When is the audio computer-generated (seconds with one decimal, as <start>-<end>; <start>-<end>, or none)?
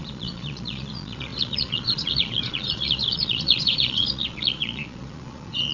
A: 0.0-5.7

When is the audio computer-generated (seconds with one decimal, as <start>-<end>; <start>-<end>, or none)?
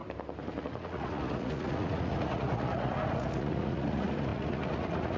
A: 0.6-5.2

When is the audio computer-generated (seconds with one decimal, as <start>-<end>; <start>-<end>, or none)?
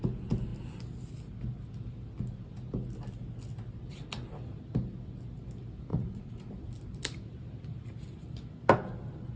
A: 5.9-6.5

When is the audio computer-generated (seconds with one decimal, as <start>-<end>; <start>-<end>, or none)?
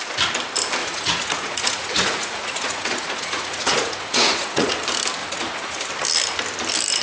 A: 0.8-4.8; 5.2-5.9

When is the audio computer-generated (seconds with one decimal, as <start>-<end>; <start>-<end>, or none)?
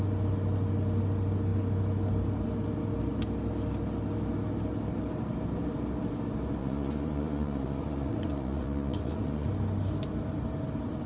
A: 6.6-9.5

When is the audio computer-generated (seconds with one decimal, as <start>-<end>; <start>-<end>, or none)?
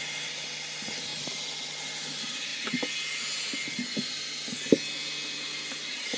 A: none